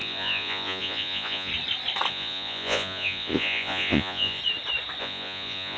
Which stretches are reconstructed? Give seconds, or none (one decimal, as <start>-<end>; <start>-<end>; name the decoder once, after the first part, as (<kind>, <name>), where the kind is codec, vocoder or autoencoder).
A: 0.0-1.5 (vocoder, Vocos); 2.1-4.4; 5.0-5.8